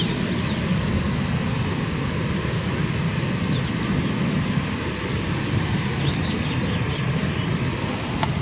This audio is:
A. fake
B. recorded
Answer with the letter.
B